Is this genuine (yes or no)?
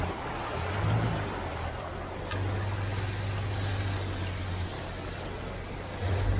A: yes